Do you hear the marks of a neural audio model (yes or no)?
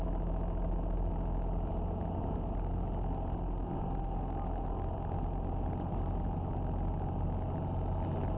no